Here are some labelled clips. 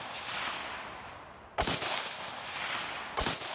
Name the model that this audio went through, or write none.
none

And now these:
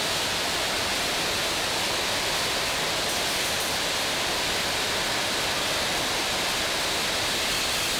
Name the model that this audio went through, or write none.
none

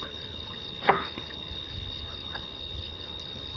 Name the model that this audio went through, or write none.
codec, HILCodec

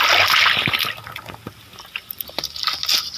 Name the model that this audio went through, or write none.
none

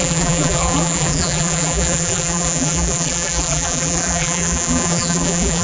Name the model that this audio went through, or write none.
vocoder, BigVGAN v2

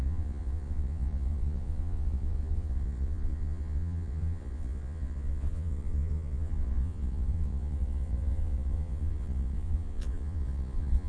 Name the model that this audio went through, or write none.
vocoder, Vocos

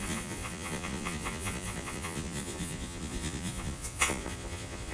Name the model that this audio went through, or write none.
vocoder, Vocos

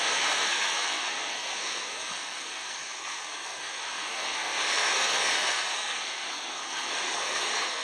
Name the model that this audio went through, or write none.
codec, SNAC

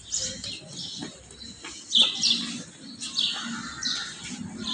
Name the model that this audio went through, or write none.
none